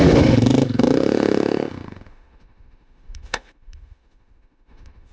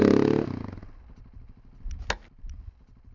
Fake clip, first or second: first